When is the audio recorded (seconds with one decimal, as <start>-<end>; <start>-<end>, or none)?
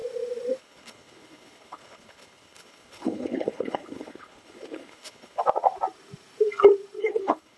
0.0-0.6; 5.4-7.0